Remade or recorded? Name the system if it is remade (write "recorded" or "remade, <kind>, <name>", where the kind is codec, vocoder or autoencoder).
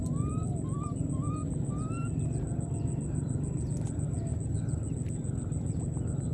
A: recorded